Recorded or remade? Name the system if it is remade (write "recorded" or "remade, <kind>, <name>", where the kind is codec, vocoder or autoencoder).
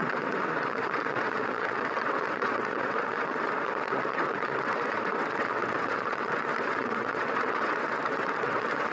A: remade, vocoder, WaveNeXt